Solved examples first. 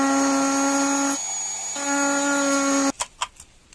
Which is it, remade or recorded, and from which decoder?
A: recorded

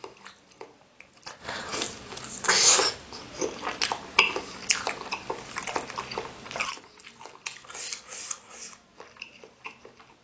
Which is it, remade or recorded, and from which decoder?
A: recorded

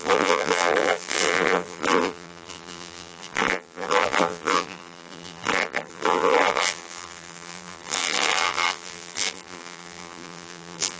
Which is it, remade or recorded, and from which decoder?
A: remade, vocoder, BigVGAN v2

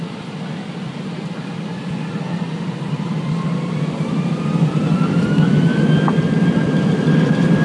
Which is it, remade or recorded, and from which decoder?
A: recorded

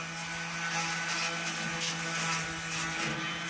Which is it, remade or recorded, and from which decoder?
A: recorded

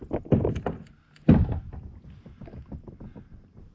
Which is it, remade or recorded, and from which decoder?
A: recorded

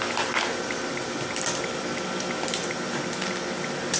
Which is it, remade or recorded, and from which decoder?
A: recorded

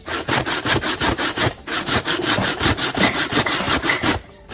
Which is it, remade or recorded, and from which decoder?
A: remade, vocoder, BigVGAN v2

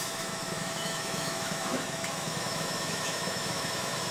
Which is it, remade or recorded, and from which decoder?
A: remade, autoencoder, DAC-VAE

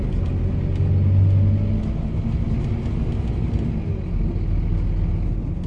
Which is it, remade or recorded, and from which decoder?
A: recorded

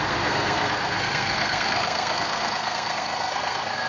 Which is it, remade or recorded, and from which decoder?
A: remade, codec, SNAC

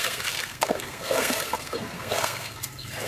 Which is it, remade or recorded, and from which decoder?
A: remade, codec, SNAC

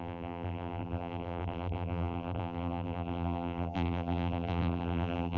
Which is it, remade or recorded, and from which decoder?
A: remade, vocoder, BigVGAN v2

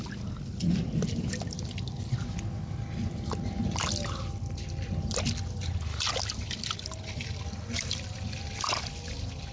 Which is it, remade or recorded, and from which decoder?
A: recorded